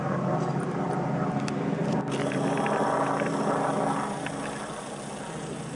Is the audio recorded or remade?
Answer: recorded